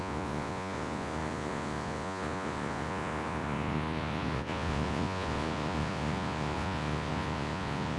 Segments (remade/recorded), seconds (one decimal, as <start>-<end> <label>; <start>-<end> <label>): 0.0-8.0 remade